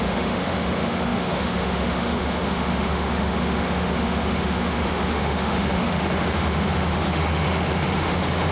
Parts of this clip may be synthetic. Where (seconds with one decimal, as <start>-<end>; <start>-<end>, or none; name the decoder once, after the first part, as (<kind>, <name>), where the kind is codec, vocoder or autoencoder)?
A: 0.0-8.5 (autoencoder, DAC-VAE)